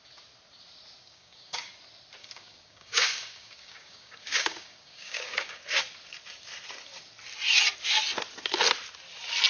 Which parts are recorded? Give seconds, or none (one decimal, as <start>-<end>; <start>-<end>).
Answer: 0.0-1.0; 1.7-2.2; 5.8-9.5

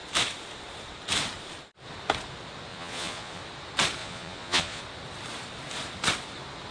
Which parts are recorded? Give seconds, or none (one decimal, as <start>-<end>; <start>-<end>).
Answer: 0.0-2.7; 3.4-4.0; 4.8-6.7

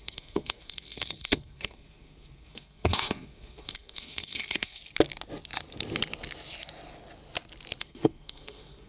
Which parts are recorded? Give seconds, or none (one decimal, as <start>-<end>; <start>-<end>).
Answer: 4.8-7.8

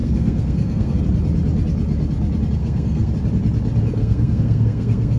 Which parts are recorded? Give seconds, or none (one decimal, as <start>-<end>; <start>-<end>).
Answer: 1.0-2.6; 3.1-4.0

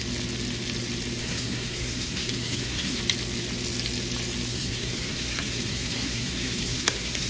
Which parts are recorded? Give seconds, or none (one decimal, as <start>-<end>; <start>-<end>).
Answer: 0.0-1.2; 3.0-4.5

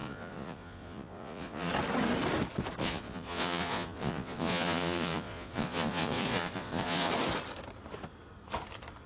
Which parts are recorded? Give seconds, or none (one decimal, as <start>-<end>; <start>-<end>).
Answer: 1.7-2.8; 7.1-9.1

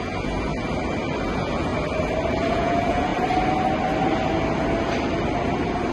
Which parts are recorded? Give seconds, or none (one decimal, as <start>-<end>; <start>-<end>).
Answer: 0.5-1.2; 1.7-2.5; 3.1-5.9

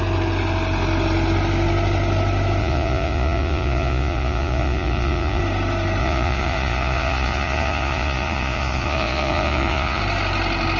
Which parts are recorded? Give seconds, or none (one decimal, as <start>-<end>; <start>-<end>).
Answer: 0.0-2.6; 5.4-6.0; 10.0-10.8